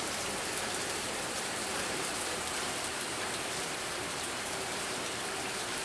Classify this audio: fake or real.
fake